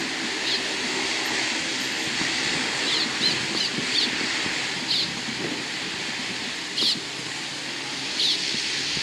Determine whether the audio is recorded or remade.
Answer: recorded